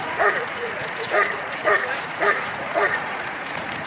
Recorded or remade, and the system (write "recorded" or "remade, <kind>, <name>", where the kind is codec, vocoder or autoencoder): remade, vocoder, Vocos